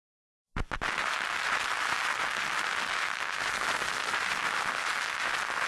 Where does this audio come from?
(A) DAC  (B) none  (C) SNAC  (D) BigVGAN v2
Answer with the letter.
B